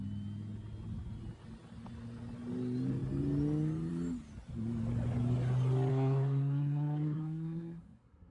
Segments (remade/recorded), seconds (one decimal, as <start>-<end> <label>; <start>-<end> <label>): 0.0-5.9 recorded; 5.9-8.3 remade